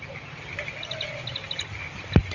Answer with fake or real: real